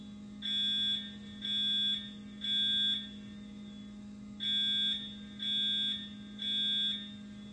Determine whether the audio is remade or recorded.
recorded